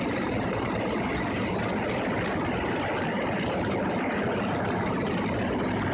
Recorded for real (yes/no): yes